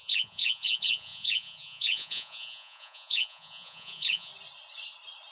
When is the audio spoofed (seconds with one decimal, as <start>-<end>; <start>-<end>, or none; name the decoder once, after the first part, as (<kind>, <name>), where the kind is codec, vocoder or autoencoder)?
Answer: 0.0-4.3 (vocoder, Vocos)